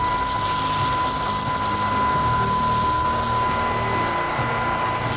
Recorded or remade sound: recorded